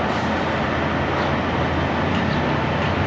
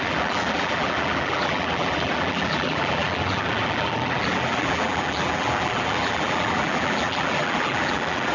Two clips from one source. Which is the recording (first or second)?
first